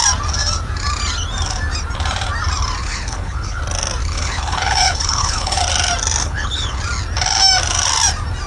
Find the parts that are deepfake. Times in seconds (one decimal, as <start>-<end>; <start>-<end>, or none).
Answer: 2.8-3.6; 4.0-5.6; 6.2-6.8